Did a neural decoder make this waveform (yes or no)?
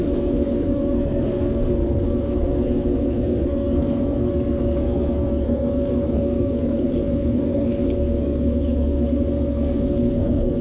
yes